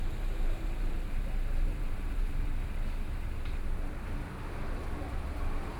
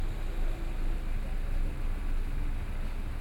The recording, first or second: second